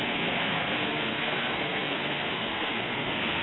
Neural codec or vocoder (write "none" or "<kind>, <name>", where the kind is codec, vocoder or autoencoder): codec, SNAC